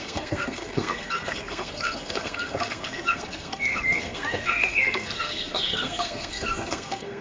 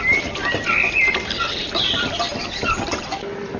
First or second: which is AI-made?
first